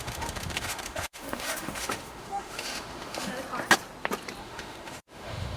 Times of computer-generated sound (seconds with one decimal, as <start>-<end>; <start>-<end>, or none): 0.0-3.3; 4.4-5.6

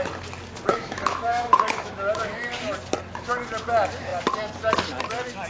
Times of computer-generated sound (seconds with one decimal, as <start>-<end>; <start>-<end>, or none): 0.7-2.4

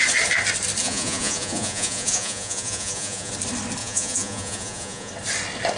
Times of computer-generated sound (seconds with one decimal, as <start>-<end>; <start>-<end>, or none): 0.8-3.3; 3.8-5.1

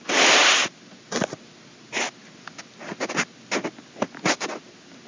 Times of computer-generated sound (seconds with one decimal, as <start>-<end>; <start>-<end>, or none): none

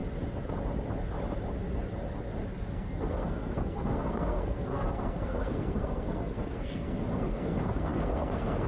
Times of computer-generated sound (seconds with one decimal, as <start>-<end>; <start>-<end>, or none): 2.7-8.7

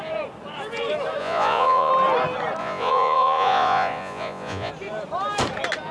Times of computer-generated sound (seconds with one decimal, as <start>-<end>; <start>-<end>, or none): 1.2-1.9; 2.6-4.7

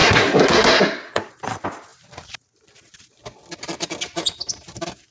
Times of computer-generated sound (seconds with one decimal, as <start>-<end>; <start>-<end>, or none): 0.0-1.3